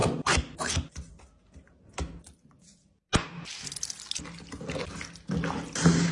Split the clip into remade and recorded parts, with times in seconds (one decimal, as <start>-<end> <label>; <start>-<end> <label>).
0.0-6.1 recorded